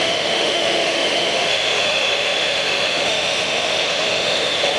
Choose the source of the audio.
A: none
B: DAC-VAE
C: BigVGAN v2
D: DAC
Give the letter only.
B